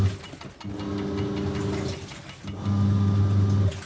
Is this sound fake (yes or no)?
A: no